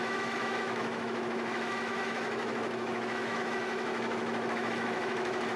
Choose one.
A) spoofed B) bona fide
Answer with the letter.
A